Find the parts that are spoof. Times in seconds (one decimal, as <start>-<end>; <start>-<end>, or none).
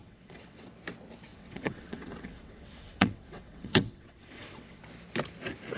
0.0-0.7; 1.3-4.8